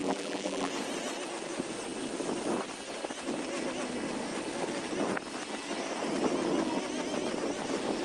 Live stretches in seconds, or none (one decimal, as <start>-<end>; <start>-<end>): 0.7-8.0